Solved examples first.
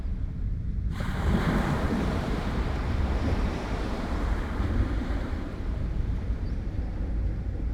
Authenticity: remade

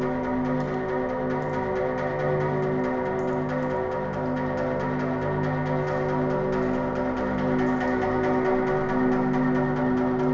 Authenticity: recorded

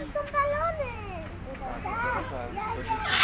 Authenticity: recorded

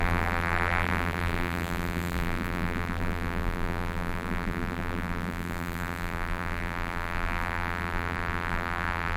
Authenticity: remade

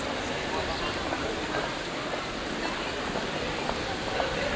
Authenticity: recorded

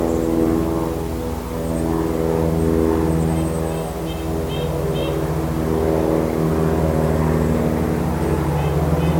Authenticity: recorded